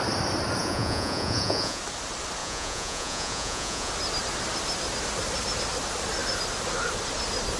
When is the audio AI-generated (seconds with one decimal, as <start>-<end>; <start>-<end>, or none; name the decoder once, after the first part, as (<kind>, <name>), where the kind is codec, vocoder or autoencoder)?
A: 0.6-1.8 (vocoder, Vocos); 2.4-3.9